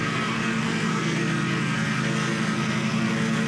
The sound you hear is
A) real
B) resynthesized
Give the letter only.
B